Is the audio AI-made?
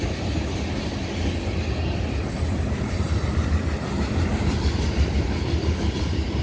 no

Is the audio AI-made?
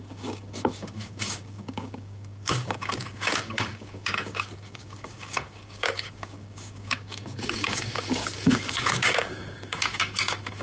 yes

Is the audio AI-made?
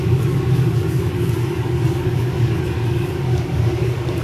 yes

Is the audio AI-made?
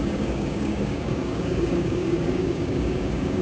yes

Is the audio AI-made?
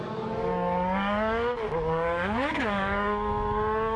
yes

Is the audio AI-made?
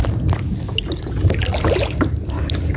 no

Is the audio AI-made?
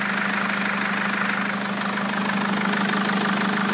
no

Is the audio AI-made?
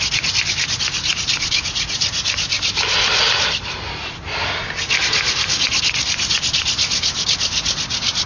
no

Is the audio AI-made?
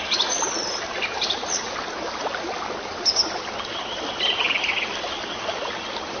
no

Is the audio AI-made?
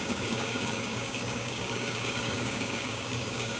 yes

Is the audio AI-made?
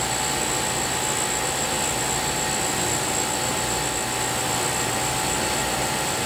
no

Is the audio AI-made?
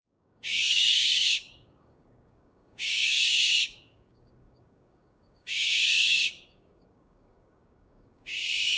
yes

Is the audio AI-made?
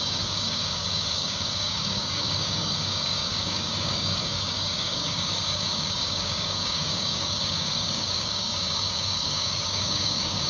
yes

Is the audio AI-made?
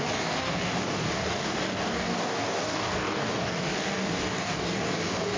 yes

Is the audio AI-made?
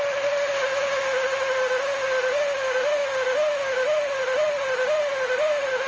no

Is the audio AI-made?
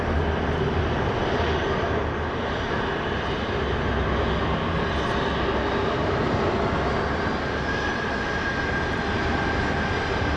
no